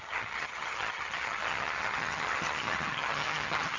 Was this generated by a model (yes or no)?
yes